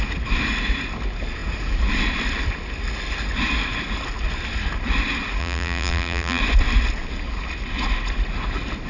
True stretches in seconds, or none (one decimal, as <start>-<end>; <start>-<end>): 0.0-5.4; 6.4-8.9